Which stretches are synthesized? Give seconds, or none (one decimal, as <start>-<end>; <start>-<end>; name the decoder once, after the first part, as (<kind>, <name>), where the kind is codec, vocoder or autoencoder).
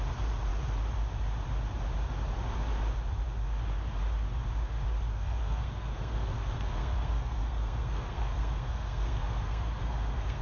5.1-10.4 (codec, SNAC)